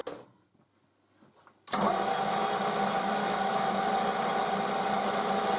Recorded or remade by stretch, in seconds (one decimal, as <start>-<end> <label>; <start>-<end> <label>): 0.0-3.2 recorded; 3.2-3.9 remade; 3.9-5.6 recorded